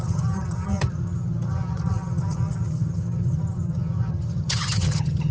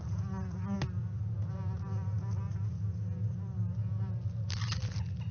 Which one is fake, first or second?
first